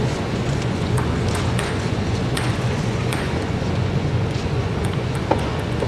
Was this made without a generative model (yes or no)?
no